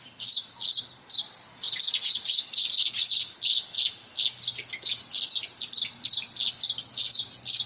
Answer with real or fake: real